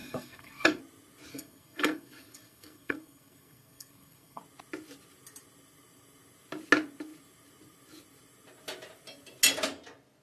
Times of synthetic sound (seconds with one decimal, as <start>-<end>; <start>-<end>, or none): 0.0-0.8; 1.3-4.4